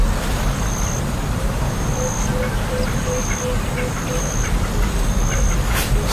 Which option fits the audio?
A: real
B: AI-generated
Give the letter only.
A